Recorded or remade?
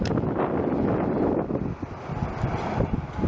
recorded